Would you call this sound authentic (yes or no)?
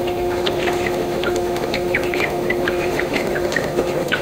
no